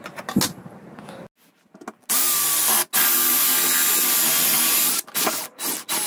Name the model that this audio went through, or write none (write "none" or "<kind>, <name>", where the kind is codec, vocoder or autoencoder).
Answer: none